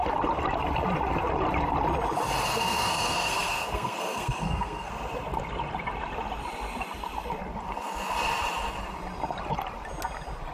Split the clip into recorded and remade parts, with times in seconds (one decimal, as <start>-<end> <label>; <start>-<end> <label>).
0.0-2.5 recorded; 2.5-4.9 remade; 4.9-10.5 recorded